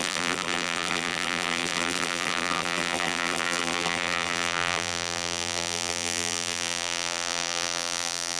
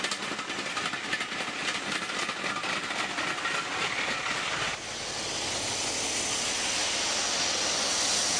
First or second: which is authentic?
second